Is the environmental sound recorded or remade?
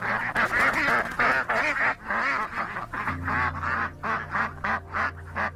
recorded